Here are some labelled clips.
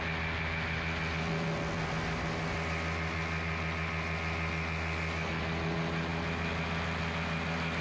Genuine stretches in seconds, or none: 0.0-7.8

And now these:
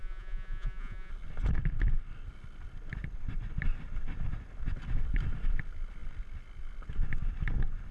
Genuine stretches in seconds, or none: 1.1-7.9

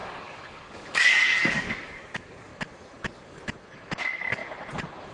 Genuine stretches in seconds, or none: 2.5-4.0; 4.4-5.1

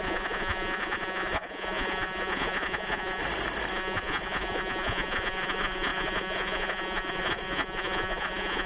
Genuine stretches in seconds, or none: 3.2-3.7